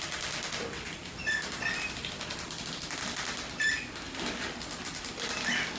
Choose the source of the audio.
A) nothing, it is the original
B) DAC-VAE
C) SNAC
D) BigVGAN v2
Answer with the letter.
A